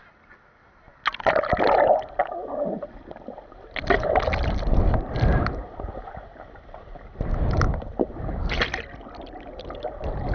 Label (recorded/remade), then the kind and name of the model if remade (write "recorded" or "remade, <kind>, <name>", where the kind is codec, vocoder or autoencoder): recorded